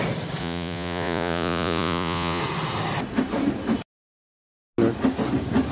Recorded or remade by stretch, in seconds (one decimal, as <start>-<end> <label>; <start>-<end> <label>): 0.0-0.4 recorded; 0.4-2.4 remade; 2.4-5.7 recorded